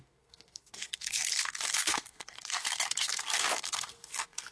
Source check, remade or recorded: remade